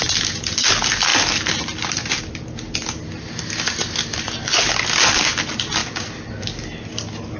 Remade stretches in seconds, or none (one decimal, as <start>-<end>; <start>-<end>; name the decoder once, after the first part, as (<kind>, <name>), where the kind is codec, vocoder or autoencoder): none